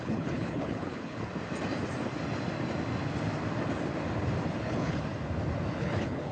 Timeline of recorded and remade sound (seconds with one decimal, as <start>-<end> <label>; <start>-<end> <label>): 0.0-1.3 remade; 1.3-4.6 recorded; 4.6-5.1 remade; 5.1-5.8 recorded; 5.8-6.3 remade